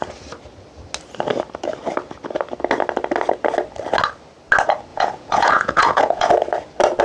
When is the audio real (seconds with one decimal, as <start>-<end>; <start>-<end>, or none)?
0.0-4.9; 6.3-7.0